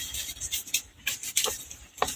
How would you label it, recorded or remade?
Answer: recorded